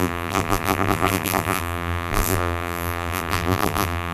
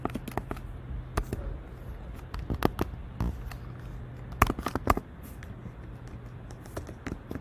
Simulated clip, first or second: first